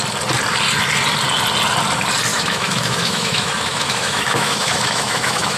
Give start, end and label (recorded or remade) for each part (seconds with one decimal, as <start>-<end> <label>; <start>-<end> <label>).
0.0-2.3 recorded; 2.3-5.6 remade

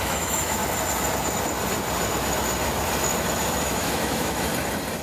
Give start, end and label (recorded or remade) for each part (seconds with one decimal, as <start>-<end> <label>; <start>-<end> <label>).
0.0-0.6 remade; 0.6-3.6 recorded; 3.6-4.5 remade; 4.5-5.0 recorded

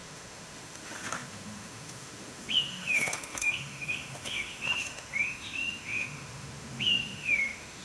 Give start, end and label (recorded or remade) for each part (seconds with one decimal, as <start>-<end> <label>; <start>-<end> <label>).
0.0-7.8 remade

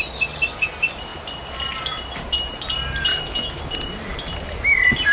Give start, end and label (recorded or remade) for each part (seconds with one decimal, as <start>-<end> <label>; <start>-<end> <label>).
0.0-3.1 recorded; 3.1-3.6 remade; 3.6-5.1 recorded

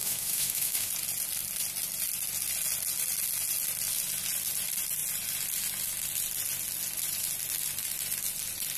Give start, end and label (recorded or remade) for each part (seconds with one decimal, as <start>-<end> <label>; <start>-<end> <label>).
0.0-0.9 remade; 0.9-8.8 recorded

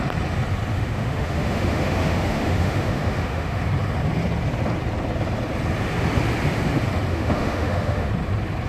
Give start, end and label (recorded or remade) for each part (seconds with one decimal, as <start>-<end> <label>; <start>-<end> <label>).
0.0-0.7 recorded; 0.7-3.6 remade; 3.6-7.1 recorded; 7.1-8.1 remade; 8.1-8.7 recorded